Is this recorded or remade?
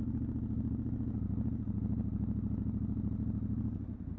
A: recorded